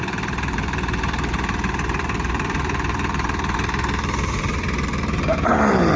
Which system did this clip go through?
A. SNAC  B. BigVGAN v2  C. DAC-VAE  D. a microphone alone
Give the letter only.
B